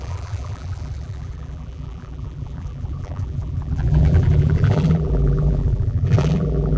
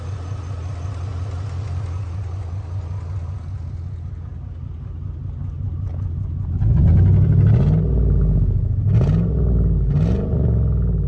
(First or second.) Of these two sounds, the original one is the second